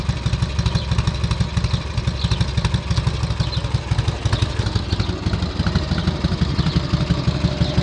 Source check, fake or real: real